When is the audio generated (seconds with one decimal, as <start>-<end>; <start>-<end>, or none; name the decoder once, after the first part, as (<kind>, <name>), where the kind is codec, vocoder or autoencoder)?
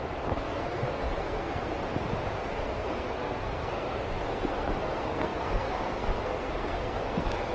0.0-1.8 (codec, SNAC); 2.4-7.5